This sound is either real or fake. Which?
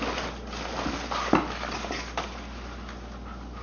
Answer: real